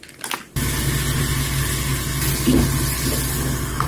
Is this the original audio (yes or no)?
yes